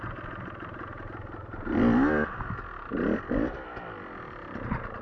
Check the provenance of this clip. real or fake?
real